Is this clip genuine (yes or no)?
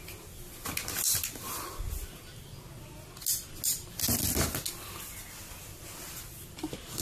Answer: yes